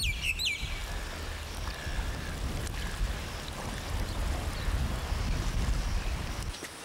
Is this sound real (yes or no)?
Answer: yes